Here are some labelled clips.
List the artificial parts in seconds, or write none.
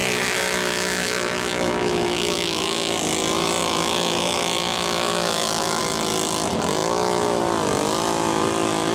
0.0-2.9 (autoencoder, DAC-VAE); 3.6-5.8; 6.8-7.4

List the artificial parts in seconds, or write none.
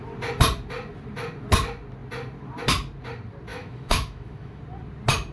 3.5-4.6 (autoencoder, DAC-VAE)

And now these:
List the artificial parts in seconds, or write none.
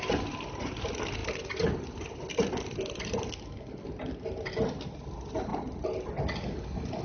none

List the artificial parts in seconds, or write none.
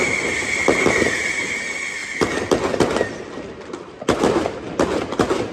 none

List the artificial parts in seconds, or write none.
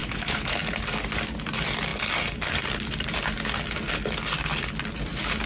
0.0-0.6 (autoencoder, DAC-VAE)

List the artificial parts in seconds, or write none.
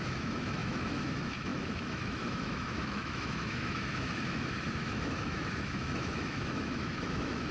0.0-7.5 (autoencoder, DAC-VAE)